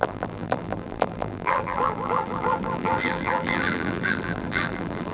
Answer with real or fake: fake